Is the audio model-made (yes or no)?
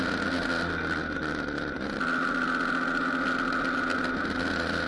no